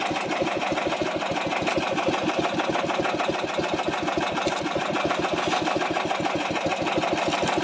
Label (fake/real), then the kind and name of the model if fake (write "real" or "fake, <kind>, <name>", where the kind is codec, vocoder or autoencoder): real